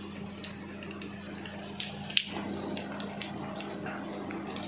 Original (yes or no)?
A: yes